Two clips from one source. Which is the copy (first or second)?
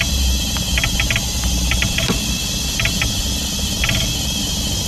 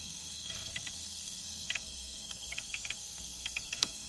second